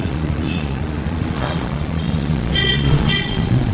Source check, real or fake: fake